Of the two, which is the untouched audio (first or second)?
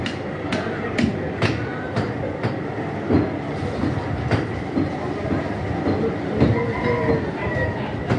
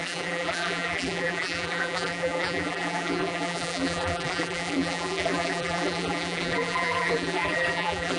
first